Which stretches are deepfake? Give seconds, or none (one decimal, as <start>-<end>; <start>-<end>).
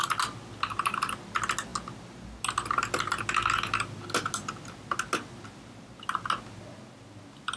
none